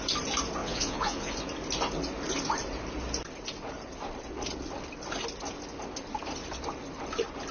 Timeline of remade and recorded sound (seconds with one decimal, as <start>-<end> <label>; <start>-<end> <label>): 0.0-0.6 recorded; 0.6-1.3 remade; 1.3-7.5 recorded

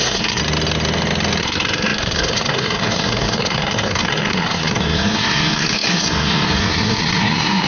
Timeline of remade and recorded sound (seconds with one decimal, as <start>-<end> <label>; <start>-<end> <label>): 0.0-0.4 remade; 0.4-1.4 recorded; 1.4-7.7 remade

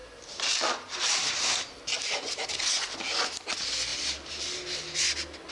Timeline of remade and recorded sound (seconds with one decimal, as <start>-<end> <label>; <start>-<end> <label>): 0.0-1.7 remade; 1.7-3.9 recorded; 3.9-4.8 remade; 4.8-5.5 recorded

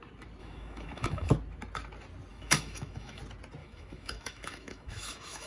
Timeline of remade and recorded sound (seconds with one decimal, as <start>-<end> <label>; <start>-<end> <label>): 0.0-0.4 recorded; 0.4-1.3 remade; 1.3-2.3 recorded; 2.3-3.2 remade; 3.2-3.6 recorded; 3.6-5.5 remade

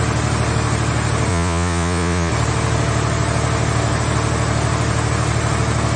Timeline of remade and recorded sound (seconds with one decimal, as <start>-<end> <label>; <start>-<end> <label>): 0.0-1.3 recorded; 1.3-2.3 remade; 2.3-6.0 recorded